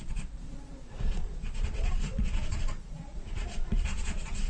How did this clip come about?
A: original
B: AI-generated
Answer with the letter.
B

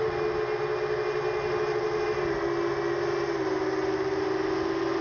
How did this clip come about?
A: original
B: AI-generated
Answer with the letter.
A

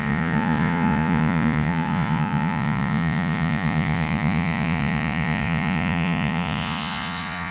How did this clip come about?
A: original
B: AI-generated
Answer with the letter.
B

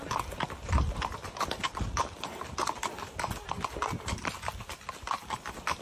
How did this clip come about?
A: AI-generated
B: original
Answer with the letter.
B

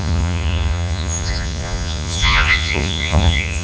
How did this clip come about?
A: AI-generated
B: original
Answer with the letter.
A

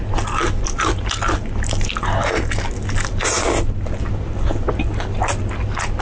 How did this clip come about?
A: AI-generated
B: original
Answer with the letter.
B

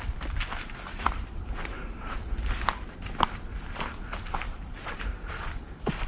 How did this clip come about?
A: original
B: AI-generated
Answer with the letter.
A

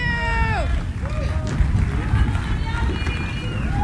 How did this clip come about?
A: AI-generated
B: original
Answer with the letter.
B